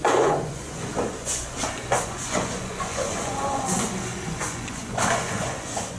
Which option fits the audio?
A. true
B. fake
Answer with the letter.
B